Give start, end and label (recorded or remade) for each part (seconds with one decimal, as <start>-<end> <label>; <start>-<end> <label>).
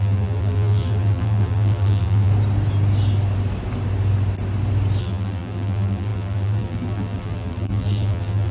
0.0-2.3 remade; 2.3-5.0 recorded; 5.0-8.5 remade